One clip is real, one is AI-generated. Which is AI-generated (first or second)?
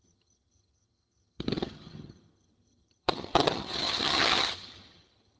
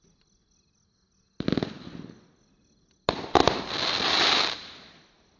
first